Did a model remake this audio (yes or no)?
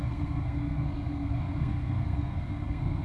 yes